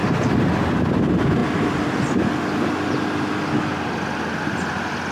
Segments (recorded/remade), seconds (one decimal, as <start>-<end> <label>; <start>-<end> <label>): 0.0-0.6 remade; 0.6-5.1 recorded